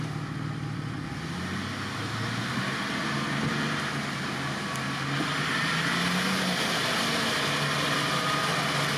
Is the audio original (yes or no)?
yes